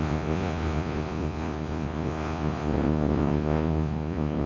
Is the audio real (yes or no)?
no